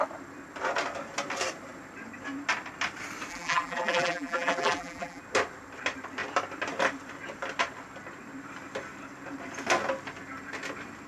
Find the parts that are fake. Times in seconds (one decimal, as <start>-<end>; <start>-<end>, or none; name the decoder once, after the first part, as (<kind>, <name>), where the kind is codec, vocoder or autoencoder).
3.3-5.2 (vocoder, BigVGAN v2)